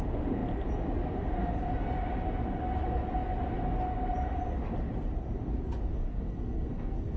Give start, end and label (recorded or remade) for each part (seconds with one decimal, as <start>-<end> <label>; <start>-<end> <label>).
0.0-5.9 recorded; 5.9-7.2 remade